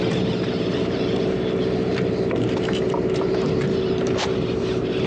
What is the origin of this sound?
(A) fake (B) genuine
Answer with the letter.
A